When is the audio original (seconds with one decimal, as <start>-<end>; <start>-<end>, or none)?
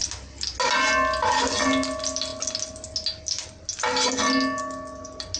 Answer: 0.0-5.4